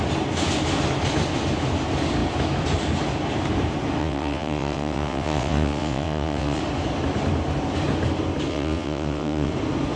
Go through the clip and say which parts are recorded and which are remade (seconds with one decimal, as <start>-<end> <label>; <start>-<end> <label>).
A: 0.0-4.0 recorded; 4.0-6.6 remade; 6.6-8.5 recorded; 8.5-9.5 remade; 9.5-10.0 recorded